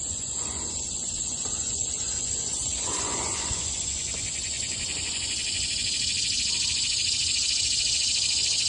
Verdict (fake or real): fake